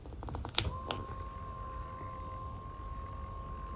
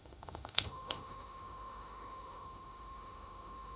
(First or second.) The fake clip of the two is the second